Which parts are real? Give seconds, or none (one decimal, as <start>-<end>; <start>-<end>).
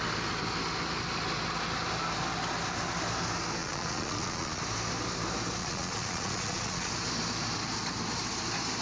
0.0-3.6; 4.6-5.6; 6.9-8.8